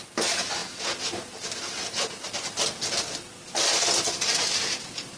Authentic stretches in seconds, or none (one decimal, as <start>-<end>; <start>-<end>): 0.0-5.2